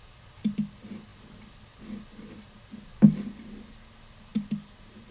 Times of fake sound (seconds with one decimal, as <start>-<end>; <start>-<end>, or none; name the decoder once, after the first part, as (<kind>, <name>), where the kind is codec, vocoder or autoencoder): none